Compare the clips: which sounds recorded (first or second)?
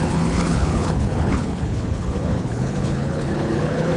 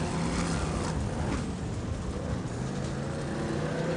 second